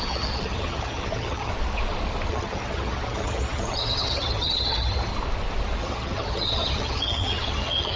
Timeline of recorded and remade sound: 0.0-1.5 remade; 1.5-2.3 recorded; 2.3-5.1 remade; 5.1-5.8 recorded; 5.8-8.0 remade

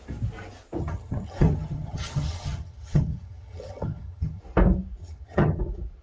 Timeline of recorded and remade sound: 0.0-0.8 recorded; 0.8-4.4 remade; 4.4-5.0 recorded; 5.0-5.6 remade; 5.6-6.0 recorded

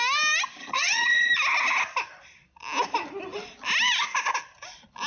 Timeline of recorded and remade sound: 0.0-0.6 recorded; 0.6-1.3 remade; 1.3-5.1 recorded

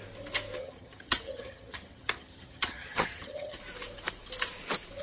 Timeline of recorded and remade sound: 0.0-0.6 recorded; 0.6-3.6 remade; 3.6-5.0 recorded

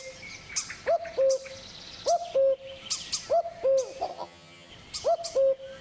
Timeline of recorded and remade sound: 0.0-4.1 recorded; 4.1-4.7 remade; 4.7-5.8 recorded

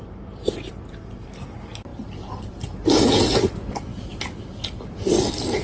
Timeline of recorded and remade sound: 0.0-5.6 recorded

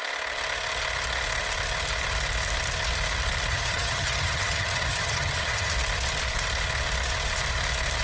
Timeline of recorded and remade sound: 0.0-3.5 recorded; 3.5-5.7 remade; 5.7-8.0 recorded